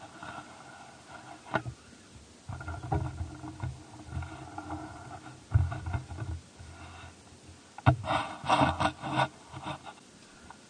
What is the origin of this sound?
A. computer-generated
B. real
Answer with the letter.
B